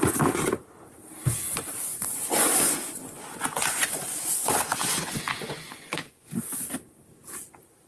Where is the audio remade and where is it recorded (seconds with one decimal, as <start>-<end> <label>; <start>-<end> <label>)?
0.0-1.9 recorded; 1.9-6.4 remade; 6.4-7.9 recorded